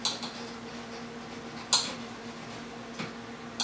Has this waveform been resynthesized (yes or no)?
no